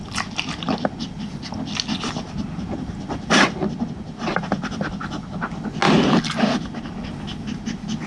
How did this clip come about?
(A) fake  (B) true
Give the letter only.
B